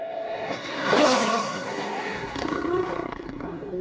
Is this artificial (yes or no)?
yes